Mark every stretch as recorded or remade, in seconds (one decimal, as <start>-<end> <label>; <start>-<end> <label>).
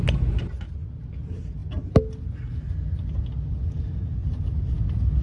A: 0.0-5.2 recorded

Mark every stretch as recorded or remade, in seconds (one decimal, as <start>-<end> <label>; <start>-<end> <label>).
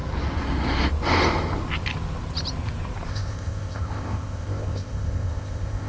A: 0.0-3.1 recorded; 3.1-5.9 remade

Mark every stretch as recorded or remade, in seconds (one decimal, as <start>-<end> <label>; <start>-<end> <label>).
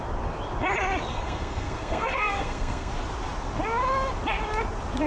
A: 0.0-1.1 recorded; 1.1-2.9 remade; 2.9-5.1 recorded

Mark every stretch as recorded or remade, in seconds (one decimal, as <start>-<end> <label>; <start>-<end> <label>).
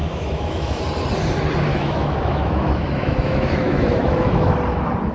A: 0.0-0.8 remade; 0.8-1.7 recorded; 1.7-4.5 remade; 4.5-5.1 recorded